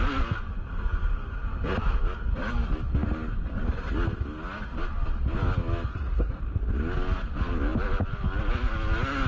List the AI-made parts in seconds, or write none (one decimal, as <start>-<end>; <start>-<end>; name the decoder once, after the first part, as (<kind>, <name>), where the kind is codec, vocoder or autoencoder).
5.9-6.4 (codec, SNAC)